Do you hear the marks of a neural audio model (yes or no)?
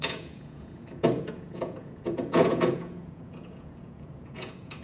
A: yes